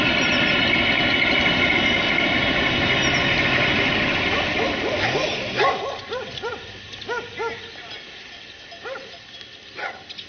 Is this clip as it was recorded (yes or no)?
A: yes